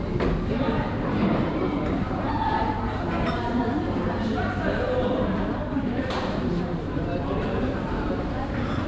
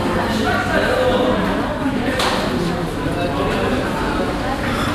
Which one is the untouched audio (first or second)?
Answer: second